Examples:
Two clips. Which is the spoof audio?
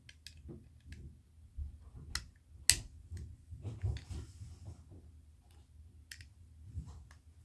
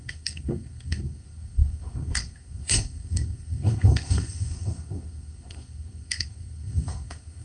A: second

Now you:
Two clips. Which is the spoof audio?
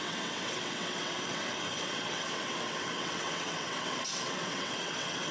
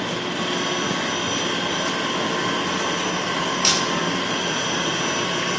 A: first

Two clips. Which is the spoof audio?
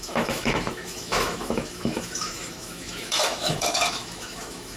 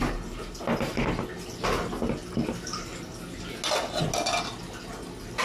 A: first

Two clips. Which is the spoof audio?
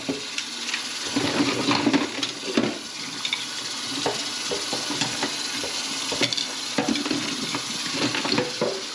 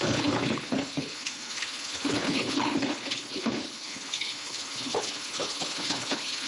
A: second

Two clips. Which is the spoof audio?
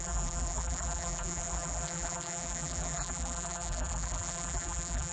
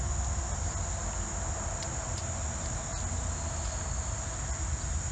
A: first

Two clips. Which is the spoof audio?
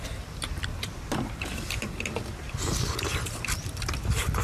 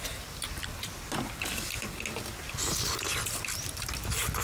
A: first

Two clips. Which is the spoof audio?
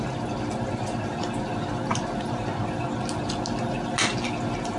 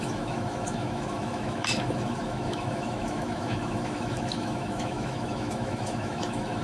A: second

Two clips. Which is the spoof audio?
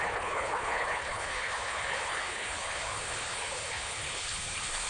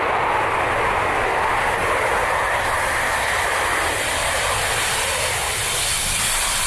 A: first